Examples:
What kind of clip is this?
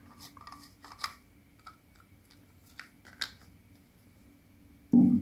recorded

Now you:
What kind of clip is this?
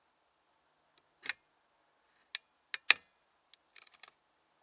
recorded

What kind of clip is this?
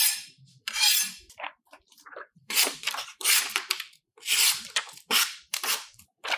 remade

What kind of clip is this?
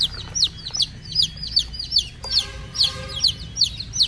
recorded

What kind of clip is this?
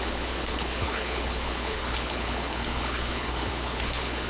remade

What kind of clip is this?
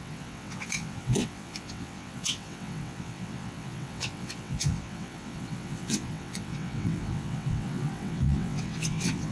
remade